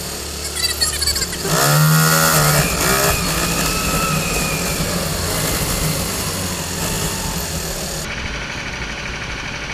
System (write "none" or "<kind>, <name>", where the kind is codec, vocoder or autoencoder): none